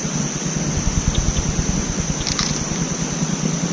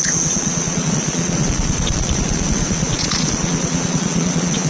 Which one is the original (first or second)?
first